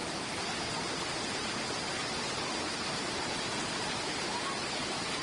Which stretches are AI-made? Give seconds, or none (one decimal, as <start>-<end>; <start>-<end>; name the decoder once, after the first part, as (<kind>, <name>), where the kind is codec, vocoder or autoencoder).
none